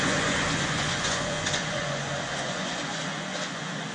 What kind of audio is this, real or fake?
fake